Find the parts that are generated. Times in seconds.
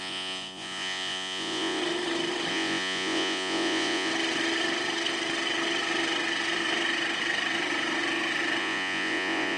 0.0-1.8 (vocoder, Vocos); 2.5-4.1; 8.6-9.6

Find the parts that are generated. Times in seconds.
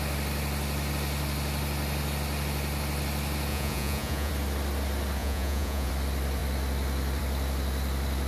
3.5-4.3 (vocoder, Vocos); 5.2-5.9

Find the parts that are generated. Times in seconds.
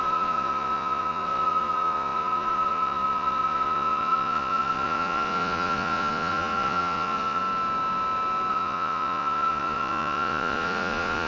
0.0-7.4 (vocoder, Vocos); 8.5-11.3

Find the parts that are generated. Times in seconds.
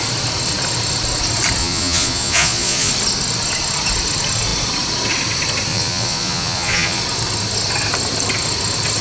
1.6-2.9 (vocoder, Vocos); 5.7-7.0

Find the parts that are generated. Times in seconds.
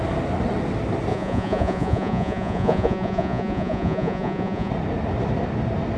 1.1-4.7 (vocoder, Vocos)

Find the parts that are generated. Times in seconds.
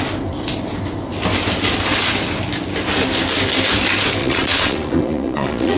4.2-5.8 (vocoder, Vocos)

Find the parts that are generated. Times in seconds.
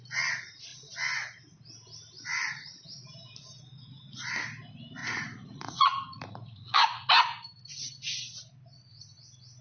5.0-7.1 (vocoder, Vocos)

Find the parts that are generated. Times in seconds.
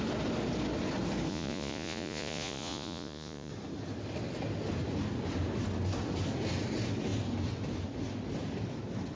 1.3-3.5 (vocoder, Vocos)